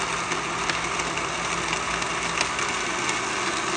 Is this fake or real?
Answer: real